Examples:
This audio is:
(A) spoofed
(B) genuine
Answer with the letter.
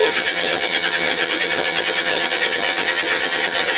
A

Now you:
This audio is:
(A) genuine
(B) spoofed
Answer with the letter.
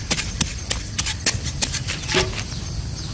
A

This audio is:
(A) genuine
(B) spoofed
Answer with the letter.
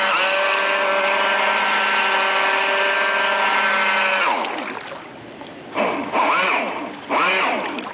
A